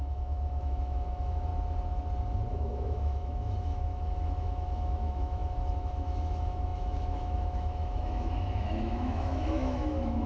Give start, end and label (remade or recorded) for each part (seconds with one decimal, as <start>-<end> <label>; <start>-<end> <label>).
0.0-1.5 remade; 1.5-2.5 recorded; 2.5-10.3 remade